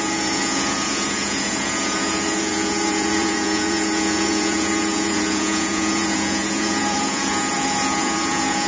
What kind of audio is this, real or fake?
fake